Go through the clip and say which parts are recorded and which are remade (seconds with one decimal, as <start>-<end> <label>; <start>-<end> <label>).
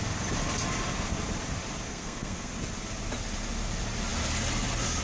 0.0-1.9 recorded; 1.9-2.5 remade; 2.5-5.0 recorded